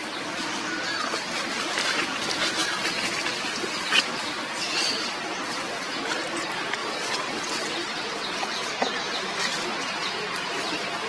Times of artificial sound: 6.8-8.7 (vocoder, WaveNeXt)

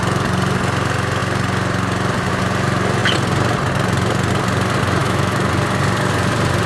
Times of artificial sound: 5.0-5.5 (autoencoder, DAC-VAE)

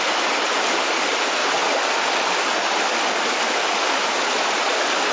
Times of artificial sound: none

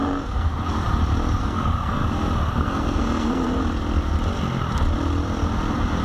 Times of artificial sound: 0.0-0.5 (codec, SNAC); 1.4-2.0; 2.5-3.6

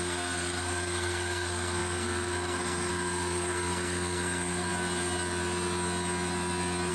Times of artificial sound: 0.0-4.7 (codec, SNAC)

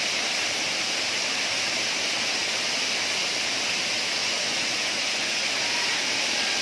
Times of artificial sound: 4.2-5.5 (vocoder, Vocos)

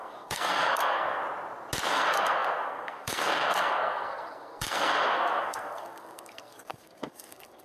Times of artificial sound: 0.0-1.2 (codec, SNAC); 1.9-7.6

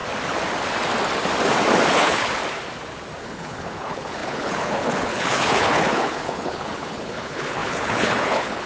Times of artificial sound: 1.9-2.4 (codec, HILCodec); 3.2-8.7